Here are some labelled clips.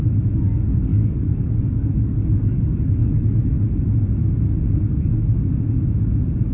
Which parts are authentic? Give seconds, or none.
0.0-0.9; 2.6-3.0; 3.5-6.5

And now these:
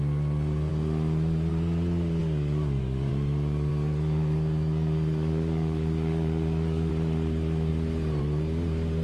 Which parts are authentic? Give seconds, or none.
0.0-2.2; 3.1-3.7; 6.9-9.0

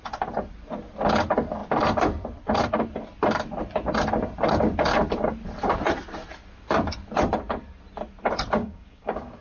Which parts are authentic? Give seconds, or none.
0.0-8.6

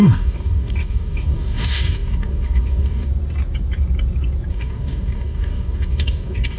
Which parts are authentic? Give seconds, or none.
3.1-4.5

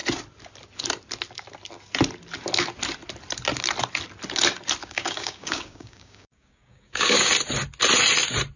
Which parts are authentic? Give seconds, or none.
0.0-4.8; 7.3-8.6

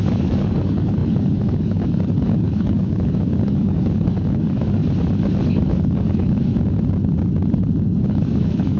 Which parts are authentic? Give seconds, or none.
4.8-5.5; 6.5-8.0

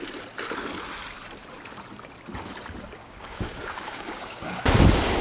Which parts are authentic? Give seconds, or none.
0.0-3.0; 4.7-5.2

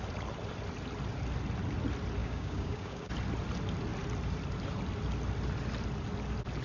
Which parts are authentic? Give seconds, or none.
0.0-2.2; 3.1-6.6